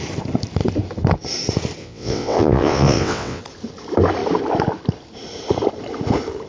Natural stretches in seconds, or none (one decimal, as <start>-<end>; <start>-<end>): 0.0-1.8; 3.4-6.5